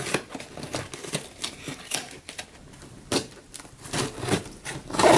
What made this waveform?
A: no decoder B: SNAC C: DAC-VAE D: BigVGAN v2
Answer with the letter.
D